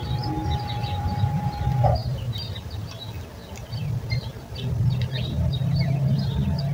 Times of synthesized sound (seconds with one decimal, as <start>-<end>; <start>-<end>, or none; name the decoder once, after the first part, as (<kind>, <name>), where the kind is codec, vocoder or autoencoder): 0.8-1.6 (vocoder, BigVGAN v2); 2.0-2.5